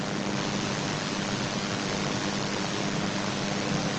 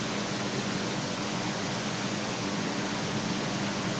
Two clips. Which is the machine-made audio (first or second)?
second